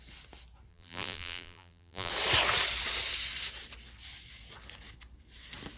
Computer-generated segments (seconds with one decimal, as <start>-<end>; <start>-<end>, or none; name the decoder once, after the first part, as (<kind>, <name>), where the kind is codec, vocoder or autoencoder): 0.7-2.1 (vocoder, BigVGAN v2)